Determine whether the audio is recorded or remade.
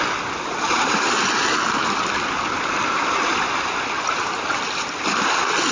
recorded